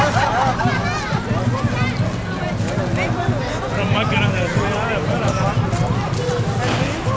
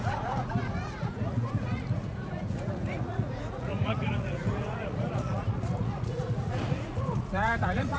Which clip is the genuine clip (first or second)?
first